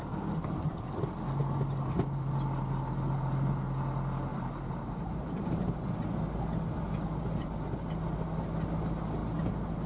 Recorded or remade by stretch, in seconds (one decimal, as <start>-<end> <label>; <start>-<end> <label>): 0.0-4.3 recorded; 4.3-5.7 remade; 5.7-9.9 recorded